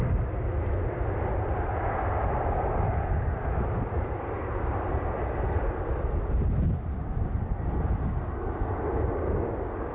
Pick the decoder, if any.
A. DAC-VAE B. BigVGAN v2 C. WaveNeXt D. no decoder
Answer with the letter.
D